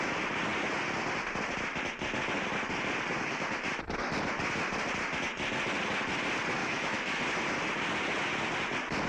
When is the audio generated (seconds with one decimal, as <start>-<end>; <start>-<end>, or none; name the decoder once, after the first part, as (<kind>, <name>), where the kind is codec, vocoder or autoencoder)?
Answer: 6.6-7.2 (autoencoder, DAC-VAE)